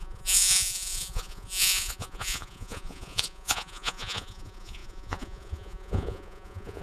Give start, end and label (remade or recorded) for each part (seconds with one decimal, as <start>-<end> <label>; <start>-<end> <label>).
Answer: 0.0-6.8 remade